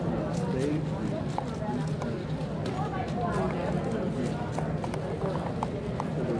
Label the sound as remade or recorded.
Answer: recorded